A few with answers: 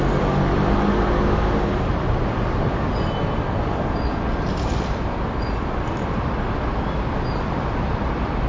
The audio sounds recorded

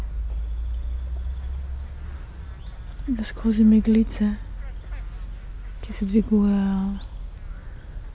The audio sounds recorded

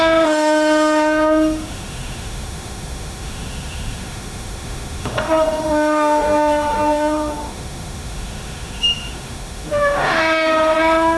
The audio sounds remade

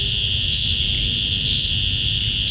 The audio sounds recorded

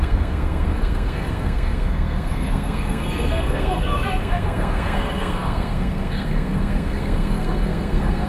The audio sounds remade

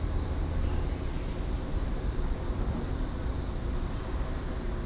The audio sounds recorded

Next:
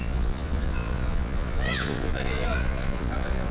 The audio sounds remade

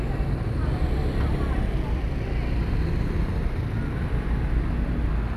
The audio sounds recorded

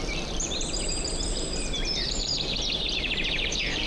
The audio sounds remade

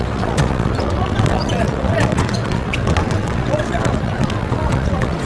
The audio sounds remade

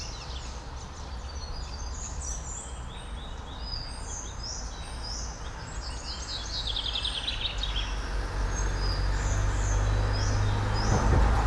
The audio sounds recorded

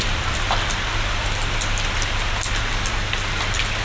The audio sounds recorded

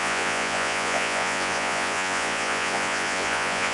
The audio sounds remade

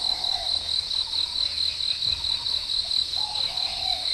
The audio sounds remade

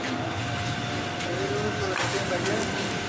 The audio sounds recorded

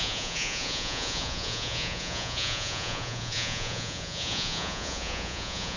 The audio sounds remade